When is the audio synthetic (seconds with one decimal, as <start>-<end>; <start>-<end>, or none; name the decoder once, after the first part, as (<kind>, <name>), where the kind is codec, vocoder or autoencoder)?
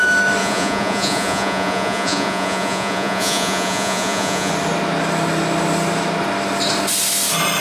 0.4-4.5 (vocoder, Vocos)